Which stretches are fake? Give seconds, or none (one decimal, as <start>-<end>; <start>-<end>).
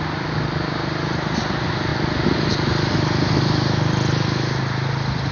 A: none